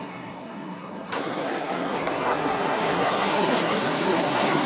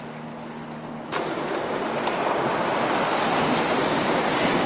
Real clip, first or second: second